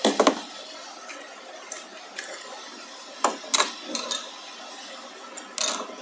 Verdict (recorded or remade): recorded